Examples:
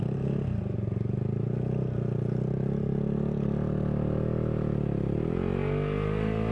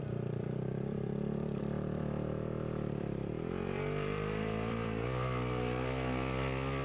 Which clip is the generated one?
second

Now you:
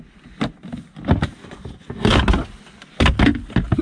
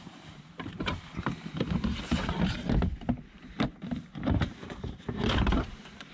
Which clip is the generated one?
second